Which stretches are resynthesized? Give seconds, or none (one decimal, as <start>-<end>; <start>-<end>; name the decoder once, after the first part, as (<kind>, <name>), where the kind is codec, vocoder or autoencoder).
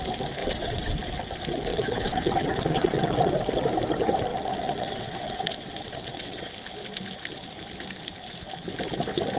0.4-1.0 (vocoder, WaveNeXt); 1.7-3.3; 4.3-6.5